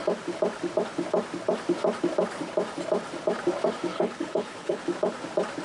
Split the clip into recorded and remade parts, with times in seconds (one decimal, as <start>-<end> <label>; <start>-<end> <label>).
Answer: 0.0-3.9 recorded; 3.9-4.8 remade; 4.8-5.6 recorded